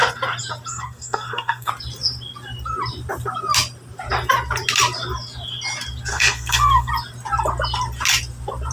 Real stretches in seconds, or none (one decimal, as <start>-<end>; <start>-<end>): 0.0-0.7; 1.7-6.1; 6.9-8.7